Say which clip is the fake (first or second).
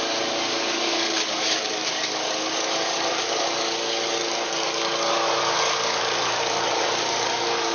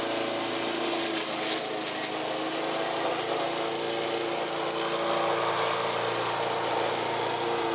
first